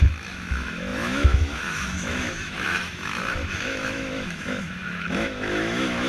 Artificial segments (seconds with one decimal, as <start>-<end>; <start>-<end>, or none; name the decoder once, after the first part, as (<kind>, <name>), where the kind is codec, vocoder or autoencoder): 0.0-6.1 (autoencoder, DAC-VAE)